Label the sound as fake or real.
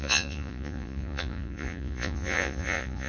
fake